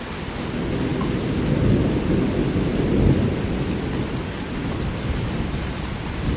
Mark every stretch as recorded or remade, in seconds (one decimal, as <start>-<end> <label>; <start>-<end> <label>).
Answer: 0.0-6.4 recorded